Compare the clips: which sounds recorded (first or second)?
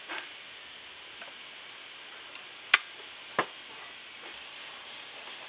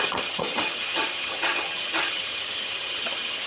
first